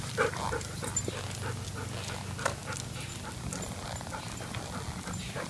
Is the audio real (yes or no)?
yes